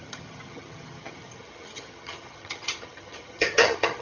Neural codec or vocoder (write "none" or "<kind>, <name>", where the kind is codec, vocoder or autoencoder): vocoder, HiFi-GAN